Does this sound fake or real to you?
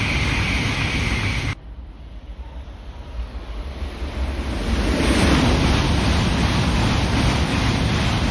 real